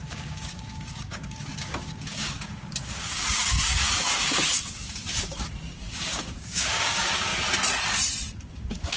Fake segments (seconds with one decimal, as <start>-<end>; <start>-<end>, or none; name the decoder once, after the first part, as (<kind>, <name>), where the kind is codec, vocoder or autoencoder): 0.0-7.3 (codec, DAC); 8.5-9.0